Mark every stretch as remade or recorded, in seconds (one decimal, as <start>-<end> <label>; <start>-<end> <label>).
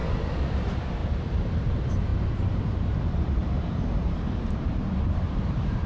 0.0-0.6 recorded; 0.6-5.9 remade